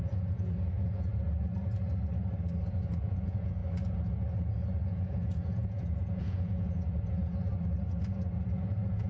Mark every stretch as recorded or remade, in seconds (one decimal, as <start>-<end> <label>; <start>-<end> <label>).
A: 0.0-1.1 remade; 1.1-3.0 recorded; 3.0-3.6 remade; 3.6-4.9 recorded; 4.9-7.2 remade; 7.2-8.5 recorded; 8.5-9.1 remade